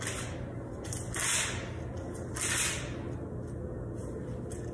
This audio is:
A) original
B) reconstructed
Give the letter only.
A